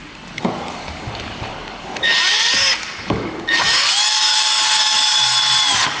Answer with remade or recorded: remade